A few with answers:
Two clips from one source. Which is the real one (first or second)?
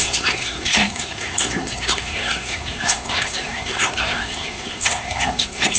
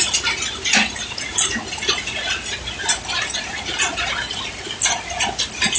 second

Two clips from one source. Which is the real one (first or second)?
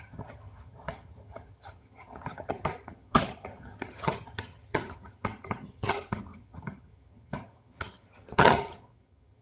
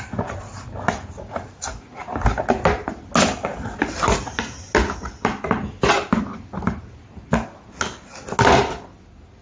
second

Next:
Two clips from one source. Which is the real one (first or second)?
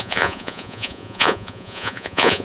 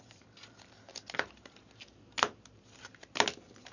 second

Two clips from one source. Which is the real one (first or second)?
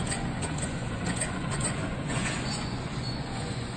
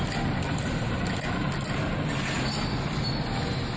second